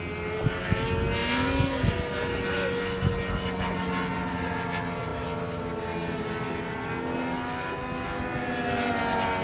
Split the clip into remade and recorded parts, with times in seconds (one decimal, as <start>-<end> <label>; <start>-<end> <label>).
0.0-9.4 recorded